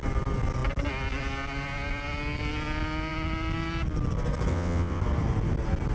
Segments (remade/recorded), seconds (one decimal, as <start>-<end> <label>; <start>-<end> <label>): 0.0-4.5 recorded; 4.5-5.0 remade; 5.0-5.9 recorded